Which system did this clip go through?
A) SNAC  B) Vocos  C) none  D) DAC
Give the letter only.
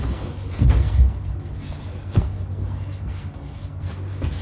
A